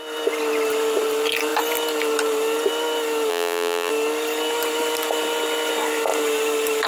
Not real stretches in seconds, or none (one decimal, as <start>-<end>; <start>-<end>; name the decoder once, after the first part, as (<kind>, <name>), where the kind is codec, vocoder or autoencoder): 3.3-3.9 (vocoder, BigVGAN v2)